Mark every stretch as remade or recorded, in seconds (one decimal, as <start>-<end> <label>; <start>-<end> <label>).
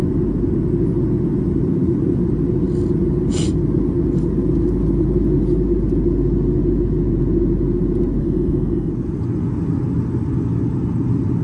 0.0-8.2 recorded; 8.2-8.9 remade; 8.9-11.4 recorded